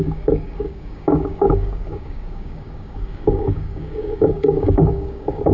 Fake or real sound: fake